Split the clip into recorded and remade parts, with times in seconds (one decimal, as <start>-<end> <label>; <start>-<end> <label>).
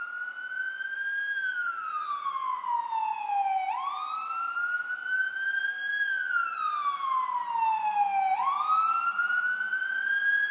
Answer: 0.0-10.5 recorded